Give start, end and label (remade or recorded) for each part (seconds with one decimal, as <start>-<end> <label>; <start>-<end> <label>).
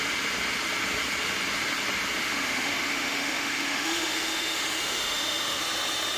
0.0-2.2 recorded; 2.2-5.6 remade; 5.6-6.2 recorded